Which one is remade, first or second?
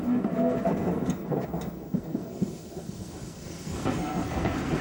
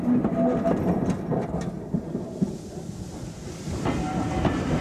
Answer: first